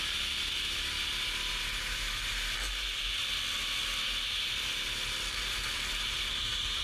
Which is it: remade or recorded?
recorded